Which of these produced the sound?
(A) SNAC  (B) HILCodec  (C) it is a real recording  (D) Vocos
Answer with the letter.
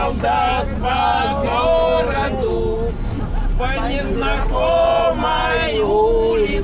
C